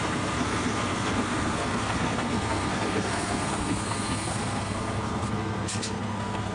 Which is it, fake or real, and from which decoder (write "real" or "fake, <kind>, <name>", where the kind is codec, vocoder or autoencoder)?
fake, codec, SNAC